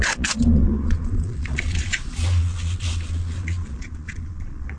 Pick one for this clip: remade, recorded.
remade